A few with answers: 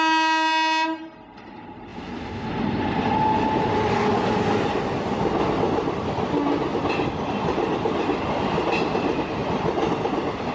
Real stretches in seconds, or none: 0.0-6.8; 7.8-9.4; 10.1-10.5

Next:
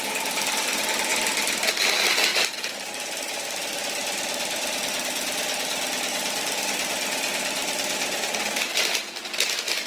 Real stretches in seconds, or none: 0.0-1.1; 1.8-4.0; 4.8-9.9